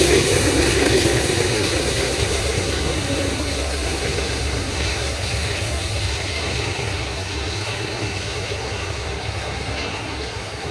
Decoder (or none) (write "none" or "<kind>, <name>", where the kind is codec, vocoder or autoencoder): codec, SNAC